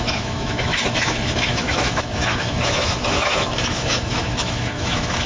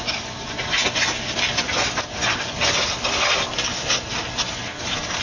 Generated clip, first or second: first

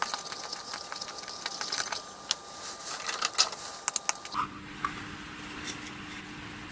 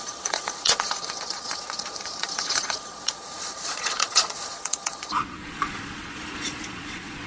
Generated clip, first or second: second